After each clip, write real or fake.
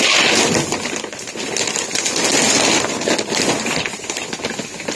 real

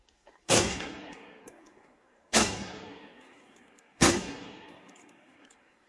fake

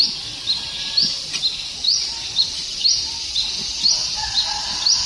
real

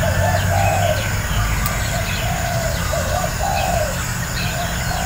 real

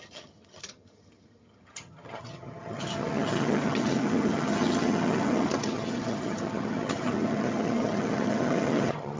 fake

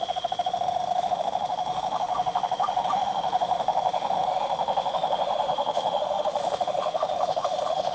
fake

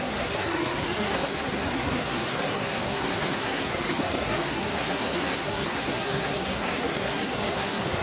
fake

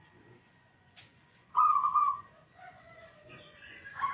fake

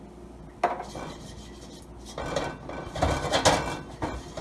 real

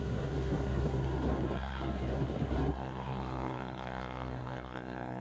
fake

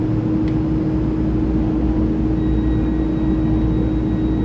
real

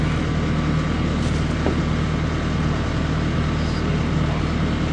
real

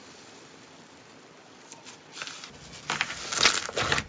real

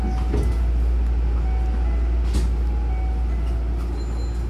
real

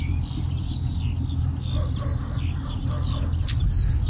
real